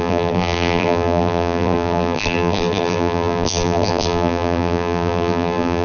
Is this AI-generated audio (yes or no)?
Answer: yes